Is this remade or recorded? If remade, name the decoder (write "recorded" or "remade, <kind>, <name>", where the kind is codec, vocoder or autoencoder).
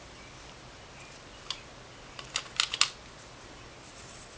recorded